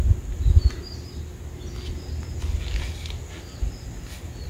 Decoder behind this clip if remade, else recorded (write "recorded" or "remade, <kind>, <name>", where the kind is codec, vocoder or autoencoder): recorded